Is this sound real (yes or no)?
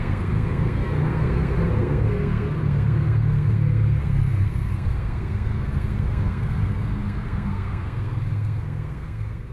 no